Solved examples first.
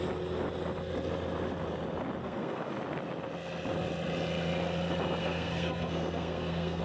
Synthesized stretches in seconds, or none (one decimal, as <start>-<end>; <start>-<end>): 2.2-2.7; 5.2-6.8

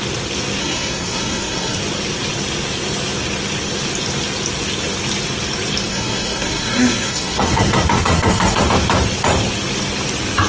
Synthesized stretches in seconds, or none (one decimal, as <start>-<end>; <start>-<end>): 0.6-1.8; 5.9-8.6

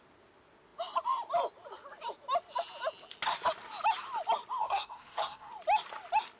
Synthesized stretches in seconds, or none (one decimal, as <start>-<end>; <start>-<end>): 4.6-5.5

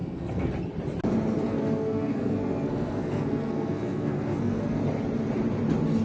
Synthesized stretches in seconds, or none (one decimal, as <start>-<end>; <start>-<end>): 0.0-0.5; 1.5-4.8

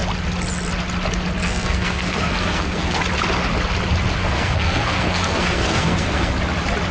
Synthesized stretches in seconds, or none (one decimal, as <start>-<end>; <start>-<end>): 1.4-3.0; 4.2-6.3

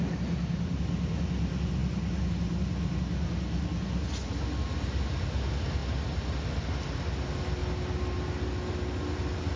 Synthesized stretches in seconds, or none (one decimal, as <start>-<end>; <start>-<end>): none

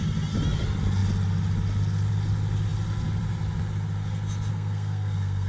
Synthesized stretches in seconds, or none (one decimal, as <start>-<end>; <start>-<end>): 4.5-5.5